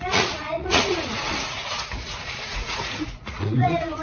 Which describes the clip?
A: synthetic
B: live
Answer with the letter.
A